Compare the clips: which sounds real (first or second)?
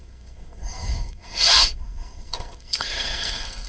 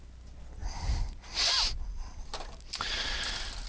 second